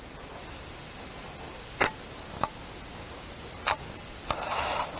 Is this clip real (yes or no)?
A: yes